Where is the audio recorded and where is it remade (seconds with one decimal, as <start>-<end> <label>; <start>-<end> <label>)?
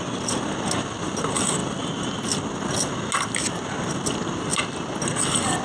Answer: 0.0-5.6 recorded